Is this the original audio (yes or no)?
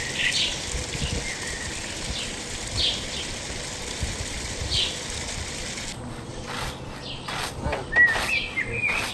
yes